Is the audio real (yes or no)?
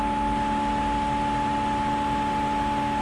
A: yes